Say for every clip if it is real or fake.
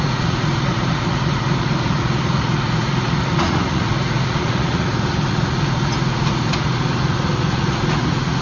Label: fake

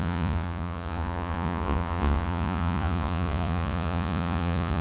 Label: fake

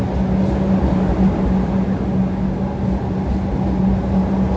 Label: real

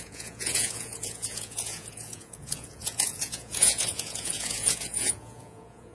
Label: fake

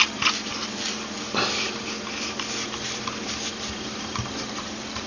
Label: real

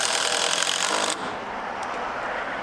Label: real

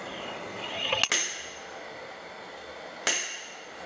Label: real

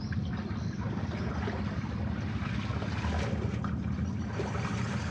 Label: real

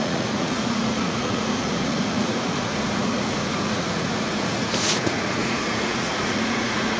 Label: fake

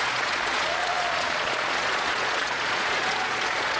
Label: fake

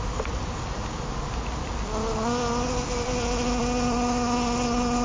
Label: real